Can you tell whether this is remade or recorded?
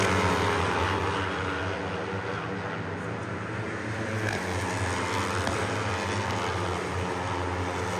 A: recorded